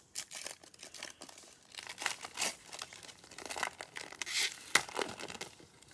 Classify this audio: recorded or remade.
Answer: recorded